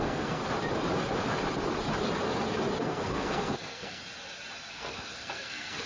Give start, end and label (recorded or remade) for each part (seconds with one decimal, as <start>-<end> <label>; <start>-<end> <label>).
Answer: 0.0-0.4 remade; 0.4-2.8 recorded; 2.8-4.0 remade; 4.0-4.7 recorded; 4.7-5.9 remade